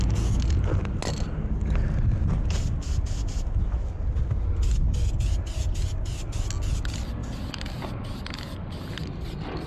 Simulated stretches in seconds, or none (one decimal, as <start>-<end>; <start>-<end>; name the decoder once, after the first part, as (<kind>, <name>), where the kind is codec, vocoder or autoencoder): none